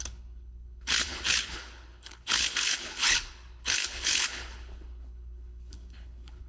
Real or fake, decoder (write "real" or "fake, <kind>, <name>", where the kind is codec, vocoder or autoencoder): fake, codec, HILCodec